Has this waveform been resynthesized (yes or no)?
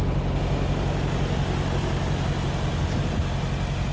no